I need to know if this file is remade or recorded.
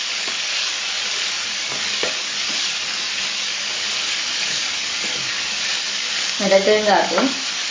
remade